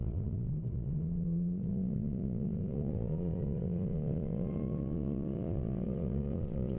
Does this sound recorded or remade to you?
remade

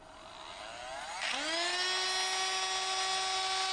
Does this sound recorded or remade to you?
recorded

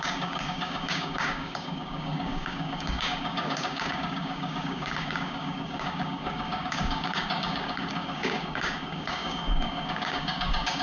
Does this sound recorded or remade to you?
remade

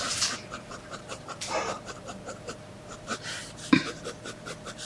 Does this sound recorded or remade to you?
remade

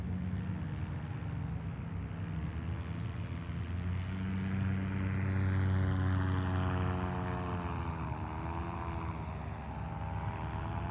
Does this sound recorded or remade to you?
recorded